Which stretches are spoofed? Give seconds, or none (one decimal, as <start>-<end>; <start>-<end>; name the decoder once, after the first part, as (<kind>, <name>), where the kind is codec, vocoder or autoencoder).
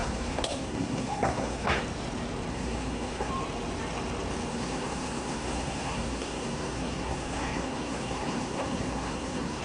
0.0-1.8 (codec, SNAC); 2.5-3.3; 4.5-9.6